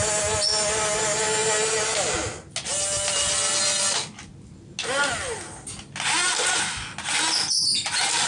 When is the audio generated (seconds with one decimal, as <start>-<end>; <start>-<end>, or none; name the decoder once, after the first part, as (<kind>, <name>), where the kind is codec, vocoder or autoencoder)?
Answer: none